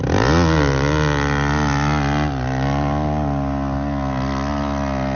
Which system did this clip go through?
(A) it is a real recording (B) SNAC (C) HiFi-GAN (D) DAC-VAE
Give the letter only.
A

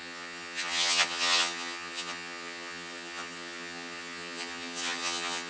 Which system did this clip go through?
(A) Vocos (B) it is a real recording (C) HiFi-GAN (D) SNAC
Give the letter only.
C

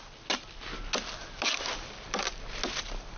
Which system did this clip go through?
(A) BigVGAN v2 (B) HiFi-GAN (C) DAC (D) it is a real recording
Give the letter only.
D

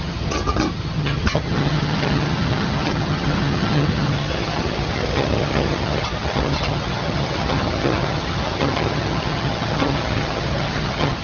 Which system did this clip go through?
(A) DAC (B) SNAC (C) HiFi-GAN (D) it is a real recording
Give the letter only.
C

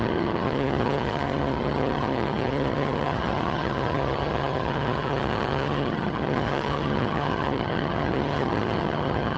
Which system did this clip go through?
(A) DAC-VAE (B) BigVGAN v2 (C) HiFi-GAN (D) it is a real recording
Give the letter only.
C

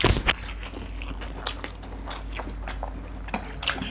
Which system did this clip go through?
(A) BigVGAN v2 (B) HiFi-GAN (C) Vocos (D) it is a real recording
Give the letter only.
D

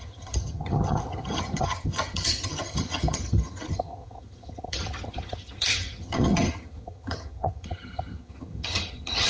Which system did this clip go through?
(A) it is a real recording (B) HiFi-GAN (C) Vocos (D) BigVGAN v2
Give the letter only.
B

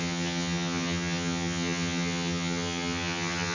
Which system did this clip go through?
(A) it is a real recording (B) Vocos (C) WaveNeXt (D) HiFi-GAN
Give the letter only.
D